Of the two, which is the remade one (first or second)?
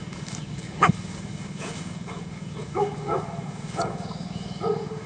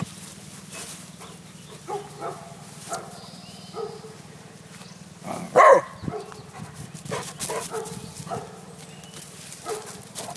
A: first